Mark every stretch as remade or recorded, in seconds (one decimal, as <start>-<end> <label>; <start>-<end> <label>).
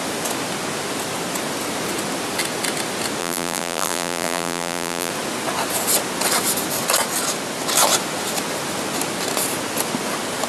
0.0-3.2 recorded; 3.2-5.1 remade; 5.1-10.5 recorded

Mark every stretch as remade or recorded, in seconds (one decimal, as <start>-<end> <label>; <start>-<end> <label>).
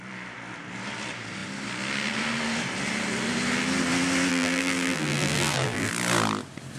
0.0-4.3 recorded; 4.3-5.9 remade; 5.9-6.8 recorded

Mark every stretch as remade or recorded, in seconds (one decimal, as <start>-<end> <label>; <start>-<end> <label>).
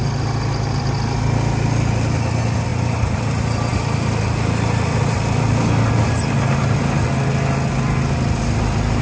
0.0-2.7 recorded; 2.7-3.2 remade; 3.2-9.0 recorded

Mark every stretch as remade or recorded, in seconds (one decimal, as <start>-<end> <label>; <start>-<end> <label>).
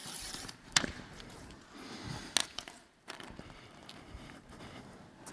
0.0-1.6 remade; 1.6-2.4 recorded; 2.4-4.6 remade; 4.6-5.3 recorded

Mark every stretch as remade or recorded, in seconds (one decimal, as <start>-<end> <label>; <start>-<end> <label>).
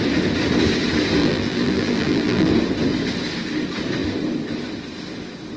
0.0-1.2 recorded; 1.2-2.5 remade; 2.5-5.6 recorded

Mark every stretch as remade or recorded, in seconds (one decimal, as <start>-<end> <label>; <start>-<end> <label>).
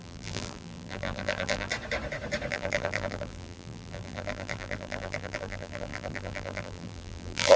0.0-1.7 remade; 1.7-2.5 recorded; 2.5-7.6 remade